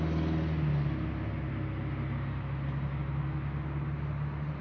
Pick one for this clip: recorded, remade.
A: recorded